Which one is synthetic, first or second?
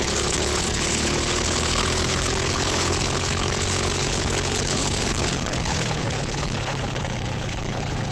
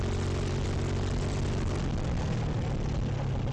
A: first